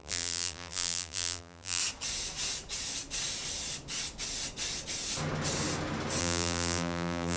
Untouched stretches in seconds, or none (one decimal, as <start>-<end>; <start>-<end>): 1.8-6.2